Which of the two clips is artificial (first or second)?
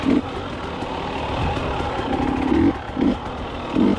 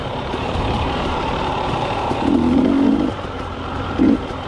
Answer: second